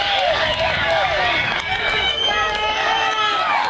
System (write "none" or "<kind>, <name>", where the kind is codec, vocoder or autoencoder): codec, DAC